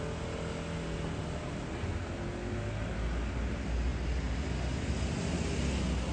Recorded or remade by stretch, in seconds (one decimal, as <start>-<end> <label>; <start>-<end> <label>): 0.0-6.1 recorded